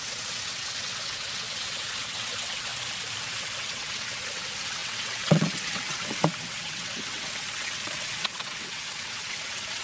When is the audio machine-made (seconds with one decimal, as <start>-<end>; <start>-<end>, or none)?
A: 0.0-2.7; 3.2-9.8